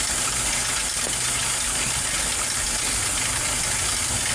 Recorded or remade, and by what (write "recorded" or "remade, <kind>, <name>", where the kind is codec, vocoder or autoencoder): recorded